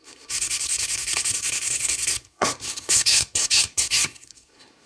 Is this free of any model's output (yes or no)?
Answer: no